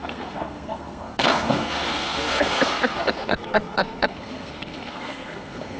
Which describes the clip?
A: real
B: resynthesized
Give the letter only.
B